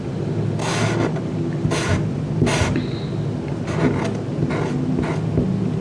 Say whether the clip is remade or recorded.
recorded